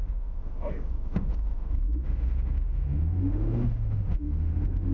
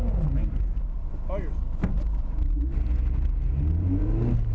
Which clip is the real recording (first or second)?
second